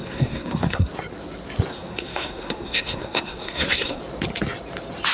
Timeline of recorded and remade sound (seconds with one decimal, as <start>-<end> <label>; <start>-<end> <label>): 0.0-0.9 remade; 0.9-1.7 recorded; 1.7-4.0 remade; 4.0-5.1 recorded